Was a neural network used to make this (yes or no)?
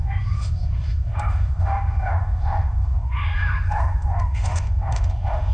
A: yes